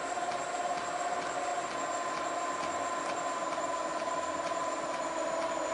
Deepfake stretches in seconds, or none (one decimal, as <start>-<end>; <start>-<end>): 0.0-0.4; 0.9-1.5; 3.2-5.7